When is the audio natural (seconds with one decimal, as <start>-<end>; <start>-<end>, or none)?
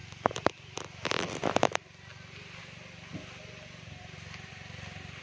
0.0-5.2